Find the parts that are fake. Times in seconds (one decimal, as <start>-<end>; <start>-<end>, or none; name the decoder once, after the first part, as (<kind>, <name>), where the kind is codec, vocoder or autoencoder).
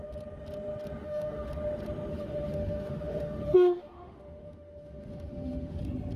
1.0-1.5 (autoencoder, DAC-VAE); 2.1-5.8